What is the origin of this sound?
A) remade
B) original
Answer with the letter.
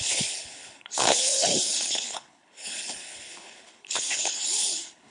A